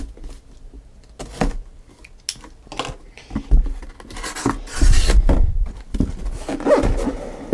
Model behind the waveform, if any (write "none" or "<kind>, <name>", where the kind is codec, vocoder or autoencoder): none